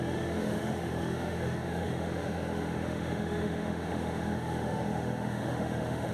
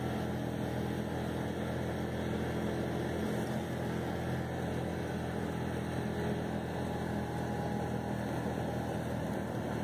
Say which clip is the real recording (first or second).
second